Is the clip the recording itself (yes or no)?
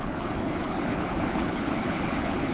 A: no